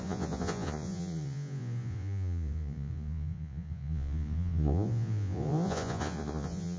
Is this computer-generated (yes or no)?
yes